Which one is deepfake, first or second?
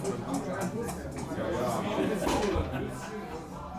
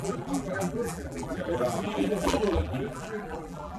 second